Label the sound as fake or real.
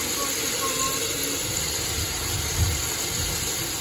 real